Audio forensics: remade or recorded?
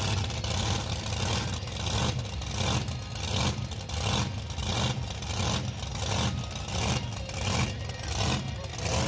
recorded